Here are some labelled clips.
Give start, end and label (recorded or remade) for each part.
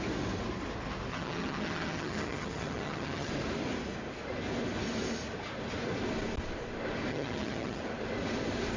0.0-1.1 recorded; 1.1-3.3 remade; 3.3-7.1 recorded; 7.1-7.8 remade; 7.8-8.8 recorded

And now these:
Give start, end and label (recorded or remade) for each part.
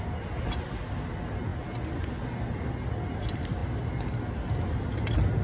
0.0-5.4 recorded